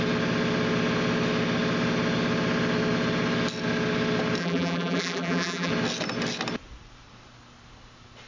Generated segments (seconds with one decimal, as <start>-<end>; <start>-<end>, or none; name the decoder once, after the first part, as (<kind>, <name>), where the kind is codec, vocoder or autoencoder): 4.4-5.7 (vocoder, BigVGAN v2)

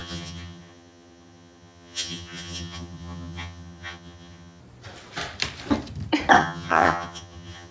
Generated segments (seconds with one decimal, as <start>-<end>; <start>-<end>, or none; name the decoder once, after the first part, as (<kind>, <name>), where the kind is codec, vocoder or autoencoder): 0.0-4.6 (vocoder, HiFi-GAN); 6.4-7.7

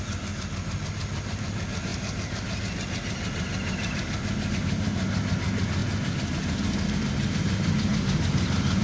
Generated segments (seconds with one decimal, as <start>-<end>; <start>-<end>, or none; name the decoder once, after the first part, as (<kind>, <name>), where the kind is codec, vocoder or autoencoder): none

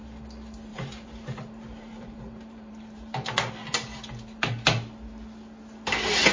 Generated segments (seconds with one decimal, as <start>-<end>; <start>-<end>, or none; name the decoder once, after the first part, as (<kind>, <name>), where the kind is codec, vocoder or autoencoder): 0.7-3.5 (vocoder, BigVGAN v2)

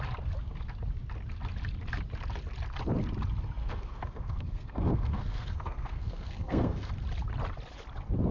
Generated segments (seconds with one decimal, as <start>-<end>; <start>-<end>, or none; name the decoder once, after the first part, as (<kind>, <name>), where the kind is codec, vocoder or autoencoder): 3.6-6.9 (codec, SNAC)

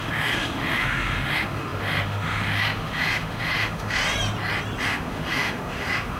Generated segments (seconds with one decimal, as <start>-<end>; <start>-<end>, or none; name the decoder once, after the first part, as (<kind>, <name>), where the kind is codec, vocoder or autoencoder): 0.0-4.0 (autoencoder, DAC-VAE); 4.8-6.2